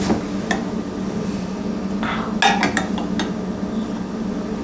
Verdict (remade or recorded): recorded